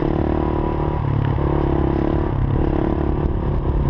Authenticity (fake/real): real